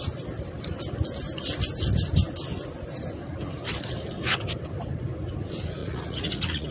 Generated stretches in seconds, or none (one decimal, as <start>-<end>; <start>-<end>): 5.8-6.7